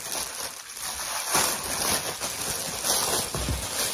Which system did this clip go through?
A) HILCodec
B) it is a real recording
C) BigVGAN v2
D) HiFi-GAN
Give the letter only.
B